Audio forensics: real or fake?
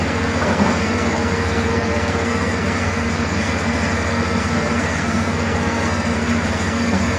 fake